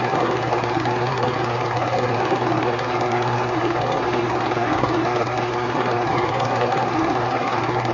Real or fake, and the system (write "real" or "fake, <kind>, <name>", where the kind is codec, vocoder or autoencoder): fake, codec, SNAC